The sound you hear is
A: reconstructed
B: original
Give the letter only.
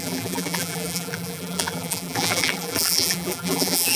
A